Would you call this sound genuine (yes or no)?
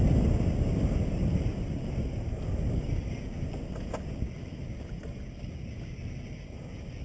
yes